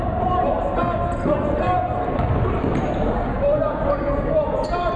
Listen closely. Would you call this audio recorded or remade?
recorded